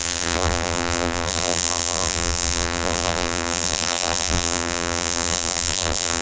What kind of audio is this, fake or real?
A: fake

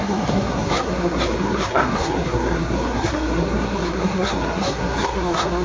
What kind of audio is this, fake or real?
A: fake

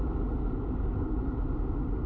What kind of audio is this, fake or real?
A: real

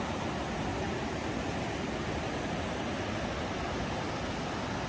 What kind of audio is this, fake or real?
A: real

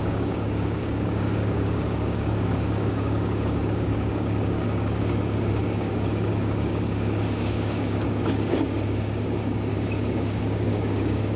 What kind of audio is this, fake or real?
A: fake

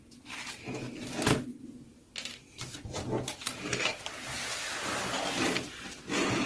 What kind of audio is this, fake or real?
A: real